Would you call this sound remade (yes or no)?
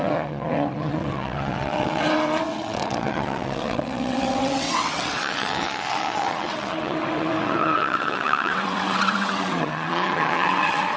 yes